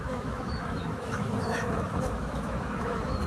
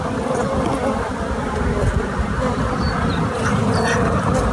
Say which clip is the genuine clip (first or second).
second